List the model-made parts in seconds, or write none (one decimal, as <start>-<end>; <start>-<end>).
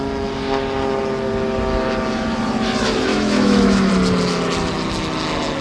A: 3.1-3.9